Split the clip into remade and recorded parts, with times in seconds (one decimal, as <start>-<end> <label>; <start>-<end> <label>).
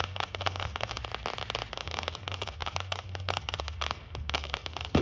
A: 0.0-1.0 remade; 1.0-1.7 recorded; 1.7-5.0 remade